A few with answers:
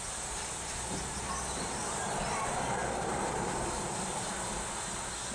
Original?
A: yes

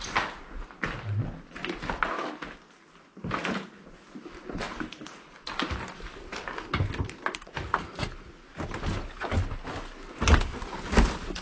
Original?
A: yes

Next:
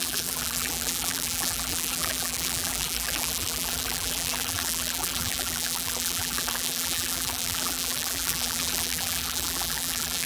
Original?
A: no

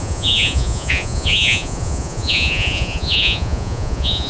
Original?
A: no